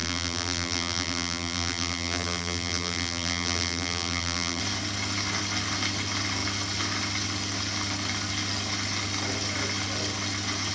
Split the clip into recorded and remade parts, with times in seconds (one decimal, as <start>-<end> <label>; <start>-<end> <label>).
0.0-4.6 remade; 4.6-10.7 recorded